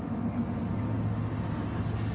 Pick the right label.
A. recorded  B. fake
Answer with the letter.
A